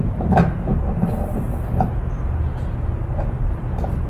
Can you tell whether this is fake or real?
real